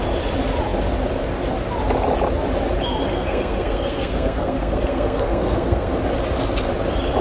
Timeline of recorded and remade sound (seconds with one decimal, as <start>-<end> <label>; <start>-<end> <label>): 0.0-3.1 recorded; 3.1-5.9 remade; 5.9-7.2 recorded